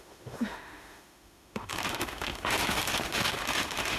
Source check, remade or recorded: remade